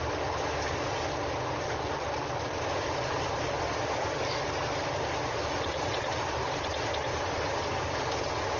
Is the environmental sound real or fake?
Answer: real